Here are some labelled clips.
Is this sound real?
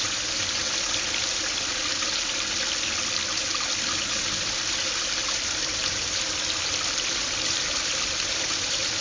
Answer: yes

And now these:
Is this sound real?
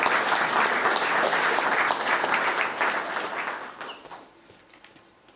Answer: yes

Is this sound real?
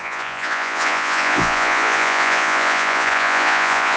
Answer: no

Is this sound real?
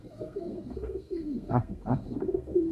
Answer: no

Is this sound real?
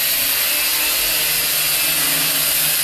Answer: yes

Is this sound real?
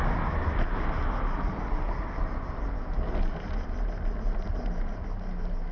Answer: yes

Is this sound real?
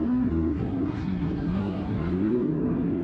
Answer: no